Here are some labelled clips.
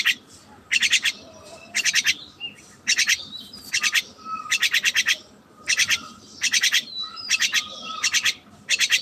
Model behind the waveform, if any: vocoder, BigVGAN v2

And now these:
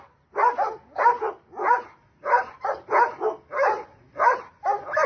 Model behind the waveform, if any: none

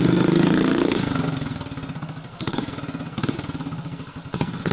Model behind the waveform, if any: codec, SNAC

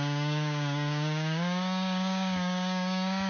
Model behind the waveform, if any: codec, DAC